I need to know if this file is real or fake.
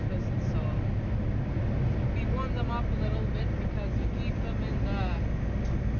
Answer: real